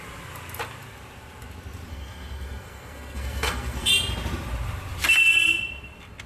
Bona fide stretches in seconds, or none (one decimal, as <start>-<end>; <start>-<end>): 0.0-1.9; 3.9-6.3